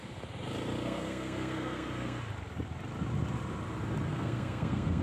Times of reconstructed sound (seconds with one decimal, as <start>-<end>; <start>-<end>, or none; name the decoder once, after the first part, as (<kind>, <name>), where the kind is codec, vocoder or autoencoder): 0.8-2.2 (codec, SNAC); 4.1-5.0